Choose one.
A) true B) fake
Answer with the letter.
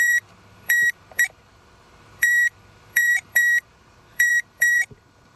B